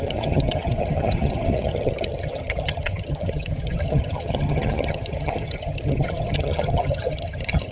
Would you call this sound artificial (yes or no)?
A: yes